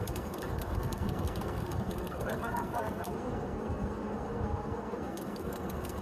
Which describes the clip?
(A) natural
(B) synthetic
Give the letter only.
B